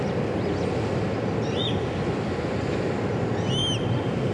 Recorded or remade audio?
recorded